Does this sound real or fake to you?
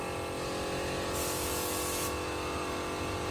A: real